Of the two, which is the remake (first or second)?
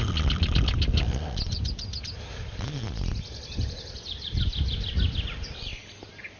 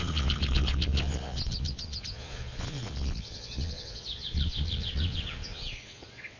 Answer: second